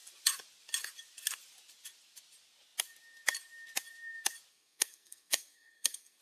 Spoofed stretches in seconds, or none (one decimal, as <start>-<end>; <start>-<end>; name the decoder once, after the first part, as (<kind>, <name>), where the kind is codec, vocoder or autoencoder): 4.5-6.2 (codec, SNAC)